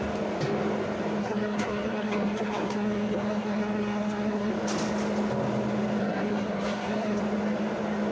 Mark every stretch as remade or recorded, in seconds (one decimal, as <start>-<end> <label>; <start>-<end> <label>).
0.0-1.2 recorded; 1.2-4.5 remade; 4.5-6.0 recorded; 6.0-7.2 remade; 7.2-8.1 recorded